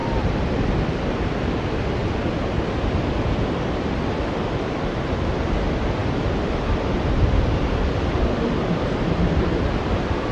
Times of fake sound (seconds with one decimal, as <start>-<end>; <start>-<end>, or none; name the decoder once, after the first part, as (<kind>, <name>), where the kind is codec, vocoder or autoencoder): 0.0-1.2 (vocoder, BigVGAN v2); 2.0-3.1